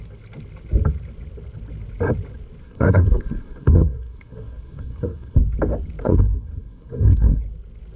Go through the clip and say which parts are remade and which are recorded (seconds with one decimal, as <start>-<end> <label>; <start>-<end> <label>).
0.0-2.6 recorded; 2.6-5.4 remade; 5.4-6.0 recorded; 6.0-7.4 remade; 7.4-8.0 recorded